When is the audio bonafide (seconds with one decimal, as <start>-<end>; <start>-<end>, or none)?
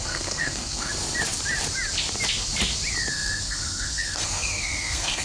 0.9-3.1